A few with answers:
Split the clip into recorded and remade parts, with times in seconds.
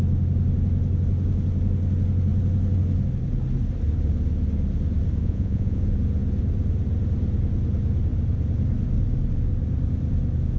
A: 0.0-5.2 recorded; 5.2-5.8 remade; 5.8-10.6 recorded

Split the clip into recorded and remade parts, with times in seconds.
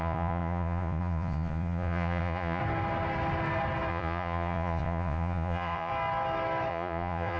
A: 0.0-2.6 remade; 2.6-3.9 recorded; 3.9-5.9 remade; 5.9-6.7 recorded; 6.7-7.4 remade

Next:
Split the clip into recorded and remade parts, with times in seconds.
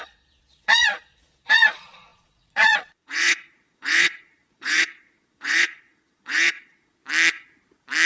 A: 0.0-7.0 remade; 7.0-8.1 recorded